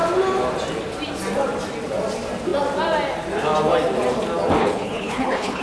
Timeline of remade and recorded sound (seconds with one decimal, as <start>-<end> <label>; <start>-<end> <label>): 0.0-4.6 recorded; 4.6-5.6 remade